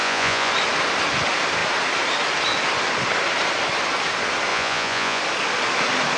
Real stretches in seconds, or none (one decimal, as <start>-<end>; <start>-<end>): 0.5-4.5; 5.2-6.2